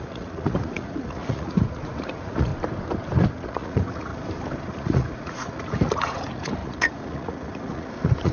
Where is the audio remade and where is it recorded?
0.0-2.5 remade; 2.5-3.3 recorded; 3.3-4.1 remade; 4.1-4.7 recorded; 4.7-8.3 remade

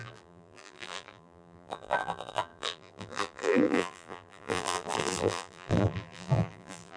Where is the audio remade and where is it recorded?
0.0-7.0 remade

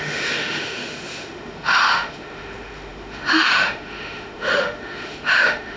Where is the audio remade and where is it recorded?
0.0-5.8 remade

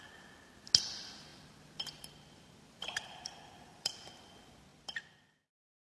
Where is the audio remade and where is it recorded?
0.0-1.3 recorded; 1.3-3.9 remade; 3.9-4.7 recorded; 4.7-5.9 remade

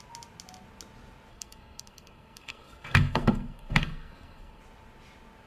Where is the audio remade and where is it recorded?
0.0-1.3 recorded; 1.3-4.6 remade; 4.6-5.5 recorded